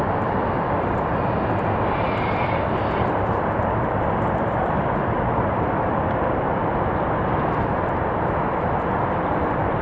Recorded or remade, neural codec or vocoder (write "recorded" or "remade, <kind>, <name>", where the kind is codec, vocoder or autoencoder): remade, vocoder, BigVGAN v2